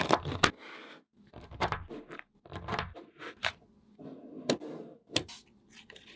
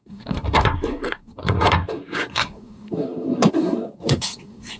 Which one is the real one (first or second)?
first